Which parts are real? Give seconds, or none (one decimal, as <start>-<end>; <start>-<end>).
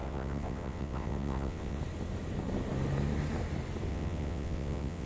1.8-3.9